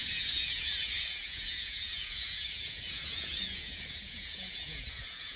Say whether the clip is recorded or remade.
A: remade